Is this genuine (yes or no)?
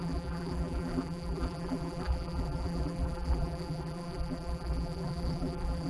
no